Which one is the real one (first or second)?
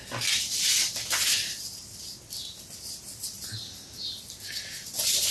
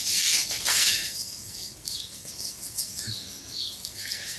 first